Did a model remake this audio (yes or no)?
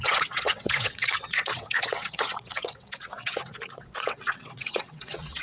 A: yes